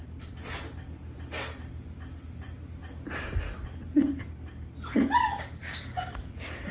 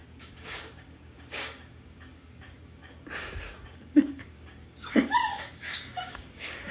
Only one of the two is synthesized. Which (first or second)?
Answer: second